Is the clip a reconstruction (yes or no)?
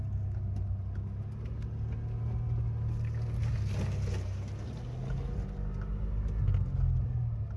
no